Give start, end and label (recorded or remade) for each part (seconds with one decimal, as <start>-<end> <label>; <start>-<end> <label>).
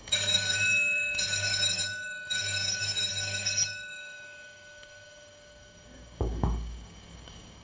0.0-7.6 remade